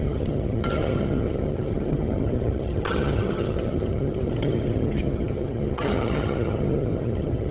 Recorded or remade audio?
remade